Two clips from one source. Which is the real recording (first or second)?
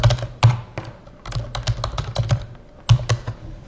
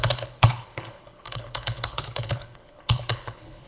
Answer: first